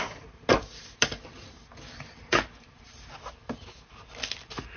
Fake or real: real